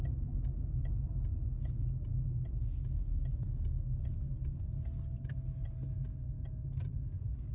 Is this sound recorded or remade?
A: recorded